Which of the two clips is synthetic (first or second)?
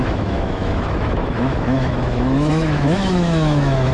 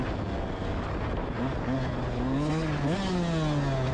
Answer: first